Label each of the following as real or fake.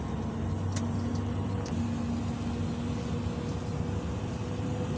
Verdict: real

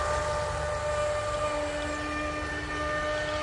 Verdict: real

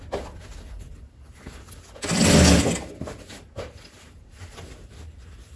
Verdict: real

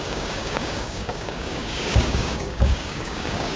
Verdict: fake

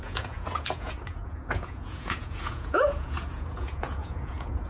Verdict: fake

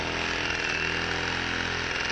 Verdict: real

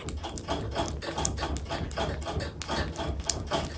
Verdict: real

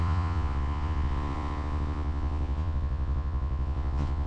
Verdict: fake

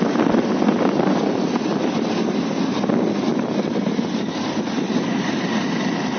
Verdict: real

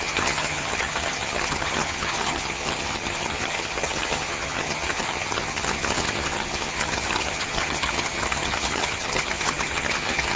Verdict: fake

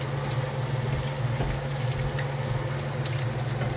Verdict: real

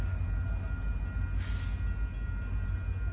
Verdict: real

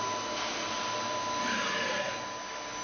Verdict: real